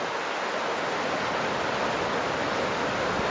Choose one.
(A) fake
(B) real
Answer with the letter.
B